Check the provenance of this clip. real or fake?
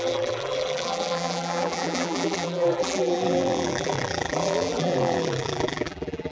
fake